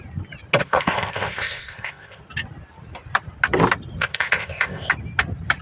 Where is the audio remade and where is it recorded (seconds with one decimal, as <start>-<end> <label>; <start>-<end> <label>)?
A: 0.0-0.6 recorded; 0.6-2.2 remade; 2.2-4.0 recorded; 4.0-4.9 remade; 4.9-5.6 recorded